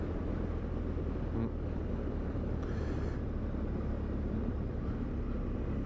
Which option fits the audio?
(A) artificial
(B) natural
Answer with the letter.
B